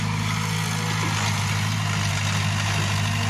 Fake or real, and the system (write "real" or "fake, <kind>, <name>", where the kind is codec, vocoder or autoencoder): real